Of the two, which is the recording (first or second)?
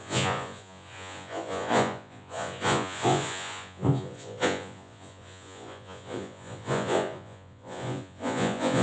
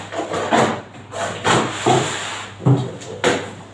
second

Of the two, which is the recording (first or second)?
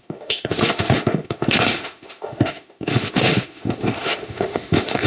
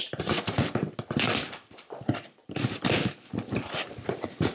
second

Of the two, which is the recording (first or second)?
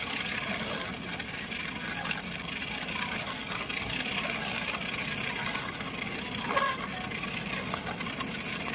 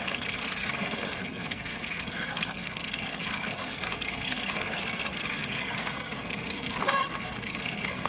first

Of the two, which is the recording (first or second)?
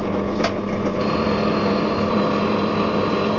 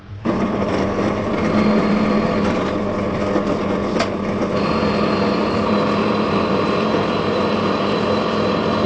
first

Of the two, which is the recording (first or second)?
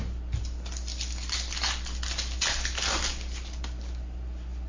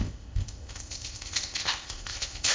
first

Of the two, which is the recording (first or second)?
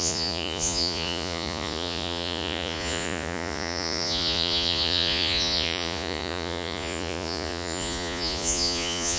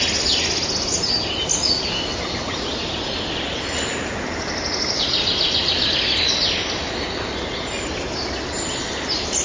second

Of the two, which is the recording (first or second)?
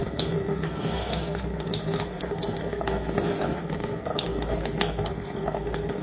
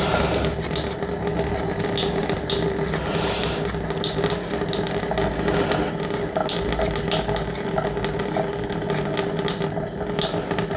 second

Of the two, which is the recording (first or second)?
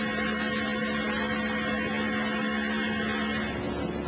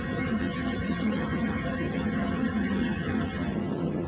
first